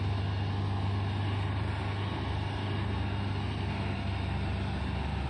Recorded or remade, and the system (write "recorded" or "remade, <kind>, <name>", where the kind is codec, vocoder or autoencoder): recorded